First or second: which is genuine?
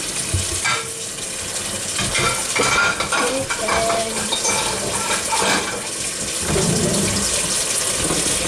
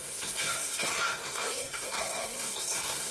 first